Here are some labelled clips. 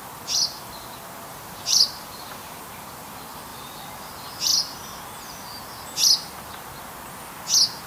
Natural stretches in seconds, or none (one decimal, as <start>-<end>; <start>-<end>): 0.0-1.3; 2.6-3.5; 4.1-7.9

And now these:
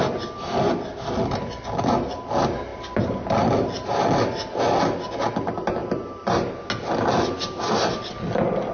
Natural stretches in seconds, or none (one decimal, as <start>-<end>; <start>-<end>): 0.0-8.7

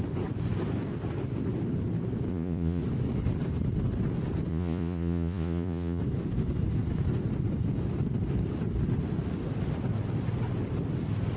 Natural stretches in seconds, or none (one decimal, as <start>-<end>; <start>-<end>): 0.0-2.3; 2.8-4.5; 6.0-11.4

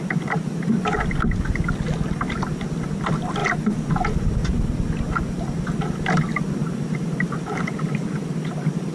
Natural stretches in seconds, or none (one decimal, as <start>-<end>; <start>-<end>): 0.0-8.9

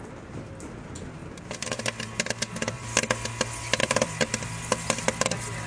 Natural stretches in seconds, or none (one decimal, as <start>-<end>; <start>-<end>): 1.2-3.8